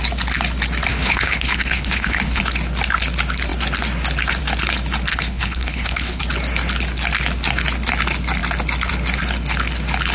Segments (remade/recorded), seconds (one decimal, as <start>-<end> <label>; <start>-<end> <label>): 0.0-0.9 recorded; 0.9-2.4 remade; 2.4-5.1 recorded; 5.1-6.2 remade; 6.2-10.1 recorded